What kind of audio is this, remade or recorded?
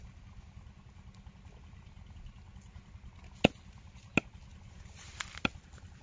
recorded